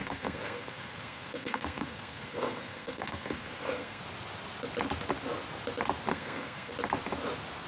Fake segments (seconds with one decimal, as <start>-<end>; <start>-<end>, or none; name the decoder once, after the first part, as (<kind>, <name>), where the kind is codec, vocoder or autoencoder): 0.0-4.0 (codec, SNAC); 6.1-6.7